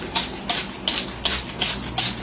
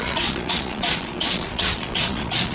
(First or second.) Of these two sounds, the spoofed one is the second